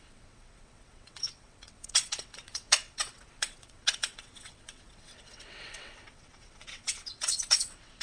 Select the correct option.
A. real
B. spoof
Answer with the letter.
B